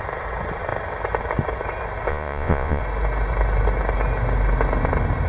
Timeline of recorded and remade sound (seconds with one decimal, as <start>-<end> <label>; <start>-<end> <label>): 0.0-2.1 recorded; 2.1-2.8 remade; 2.8-5.3 recorded